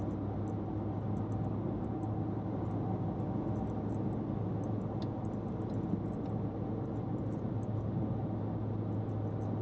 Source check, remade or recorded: recorded